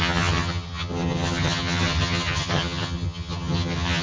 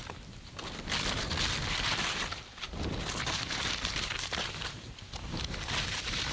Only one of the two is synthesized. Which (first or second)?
first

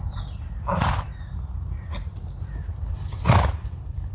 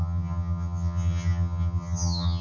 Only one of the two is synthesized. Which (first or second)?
second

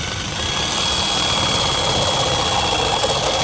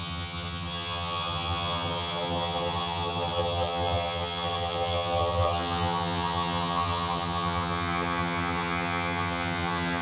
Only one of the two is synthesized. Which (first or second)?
second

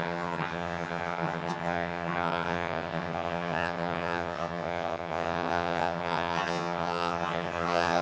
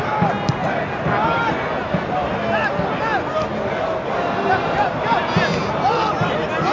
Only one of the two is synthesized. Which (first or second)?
first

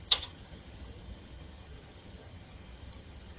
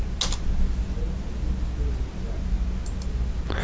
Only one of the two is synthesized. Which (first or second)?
first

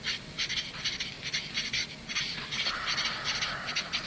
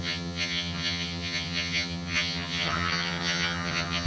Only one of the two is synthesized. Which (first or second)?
second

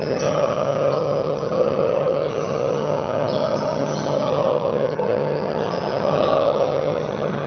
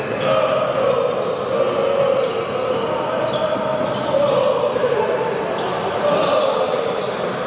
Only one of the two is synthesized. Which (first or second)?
first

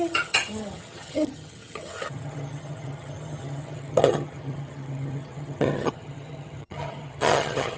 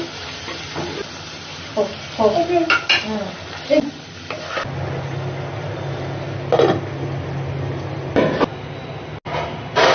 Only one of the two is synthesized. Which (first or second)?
first